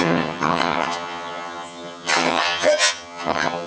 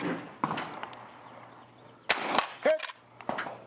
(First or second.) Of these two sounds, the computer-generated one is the first